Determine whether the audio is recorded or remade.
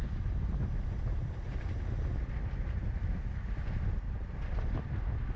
recorded